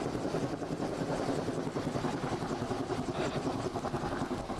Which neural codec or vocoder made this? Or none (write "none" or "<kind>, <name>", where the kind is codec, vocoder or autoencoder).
none